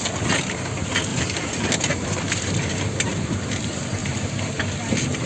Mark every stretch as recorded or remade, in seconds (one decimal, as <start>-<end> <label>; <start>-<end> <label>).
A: 0.0-1.1 recorded; 1.1-3.3 remade; 3.3-4.0 recorded; 4.0-4.5 remade; 4.5-5.3 recorded